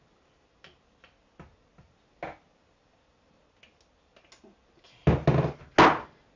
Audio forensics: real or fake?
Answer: real